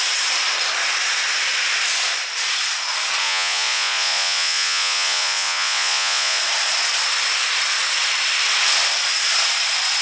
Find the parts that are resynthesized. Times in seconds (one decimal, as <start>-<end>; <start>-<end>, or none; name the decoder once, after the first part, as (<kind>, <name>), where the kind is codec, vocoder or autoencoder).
3.2-6.4 (vocoder, Vocos)